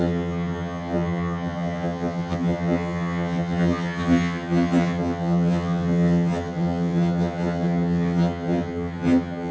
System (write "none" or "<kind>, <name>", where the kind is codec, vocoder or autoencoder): vocoder, HiFi-GAN